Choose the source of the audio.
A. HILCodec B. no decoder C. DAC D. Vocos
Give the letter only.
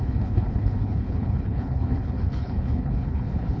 A